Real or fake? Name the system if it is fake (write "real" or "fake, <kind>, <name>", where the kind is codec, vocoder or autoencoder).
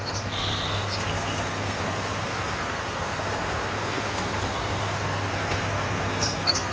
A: fake, codec, SNAC